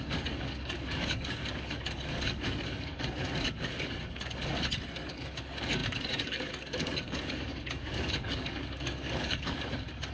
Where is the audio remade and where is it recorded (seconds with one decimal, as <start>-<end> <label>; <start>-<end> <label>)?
0.0-4.5 remade; 4.5-5.1 recorded; 5.1-10.1 remade